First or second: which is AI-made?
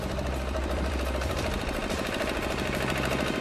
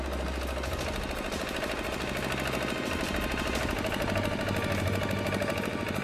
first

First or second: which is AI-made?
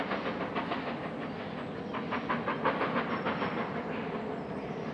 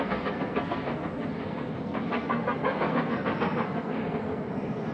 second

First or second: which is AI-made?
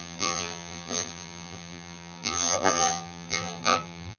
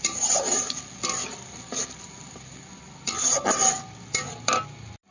first